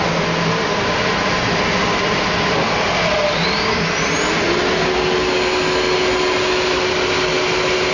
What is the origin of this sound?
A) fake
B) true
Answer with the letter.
B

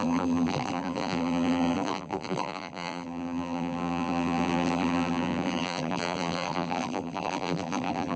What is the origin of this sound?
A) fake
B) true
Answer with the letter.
A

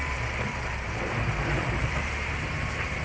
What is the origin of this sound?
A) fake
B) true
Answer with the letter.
A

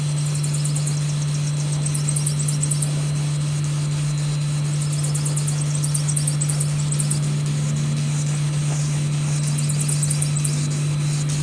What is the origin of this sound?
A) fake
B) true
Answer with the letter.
B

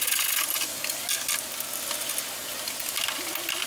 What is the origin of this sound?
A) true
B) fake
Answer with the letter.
A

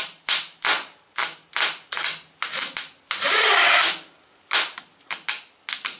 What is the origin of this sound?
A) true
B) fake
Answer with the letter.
A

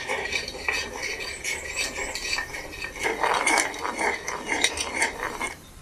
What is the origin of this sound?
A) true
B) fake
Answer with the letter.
B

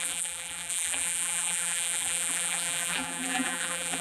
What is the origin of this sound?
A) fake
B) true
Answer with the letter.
A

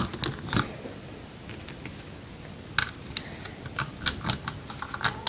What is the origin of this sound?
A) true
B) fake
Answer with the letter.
A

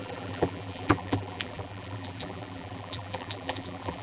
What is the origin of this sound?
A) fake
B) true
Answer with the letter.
A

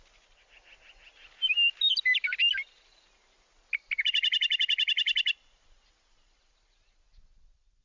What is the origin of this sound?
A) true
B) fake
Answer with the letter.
A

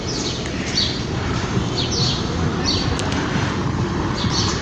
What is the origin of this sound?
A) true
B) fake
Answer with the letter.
B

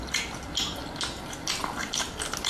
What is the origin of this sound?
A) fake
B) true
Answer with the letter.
B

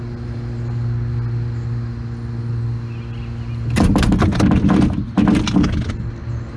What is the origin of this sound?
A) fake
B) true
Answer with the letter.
B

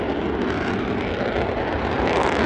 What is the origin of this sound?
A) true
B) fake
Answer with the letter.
A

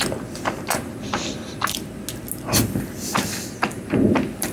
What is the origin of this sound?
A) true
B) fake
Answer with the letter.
A